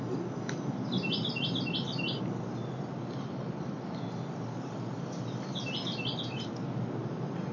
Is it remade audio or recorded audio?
recorded